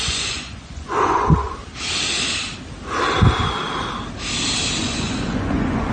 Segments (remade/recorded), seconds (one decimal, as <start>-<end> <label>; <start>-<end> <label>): 0.0-1.6 remade; 1.6-4.8 recorded; 4.8-5.9 remade